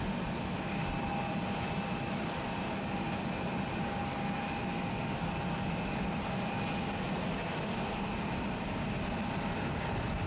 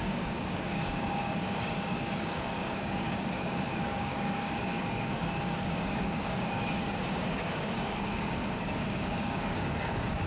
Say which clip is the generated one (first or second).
second